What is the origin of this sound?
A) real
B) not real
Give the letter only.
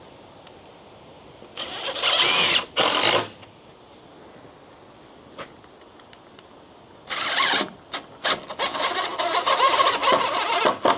A